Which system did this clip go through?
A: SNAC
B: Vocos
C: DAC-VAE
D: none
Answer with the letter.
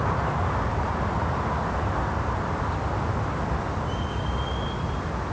D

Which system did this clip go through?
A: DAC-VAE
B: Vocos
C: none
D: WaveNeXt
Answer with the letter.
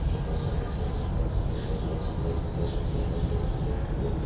C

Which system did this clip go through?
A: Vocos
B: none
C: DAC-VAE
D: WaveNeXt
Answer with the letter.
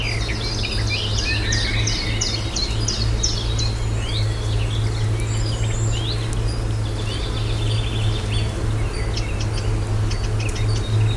B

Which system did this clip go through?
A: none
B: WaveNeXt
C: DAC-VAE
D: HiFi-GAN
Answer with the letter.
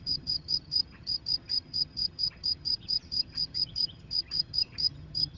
D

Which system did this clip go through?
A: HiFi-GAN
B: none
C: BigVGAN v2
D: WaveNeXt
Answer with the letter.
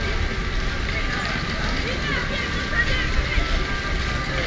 B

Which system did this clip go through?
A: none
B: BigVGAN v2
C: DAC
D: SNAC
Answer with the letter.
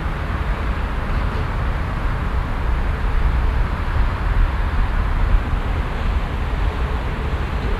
A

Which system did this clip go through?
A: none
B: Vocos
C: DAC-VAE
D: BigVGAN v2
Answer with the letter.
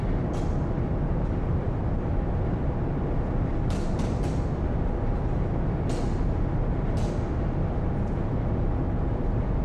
A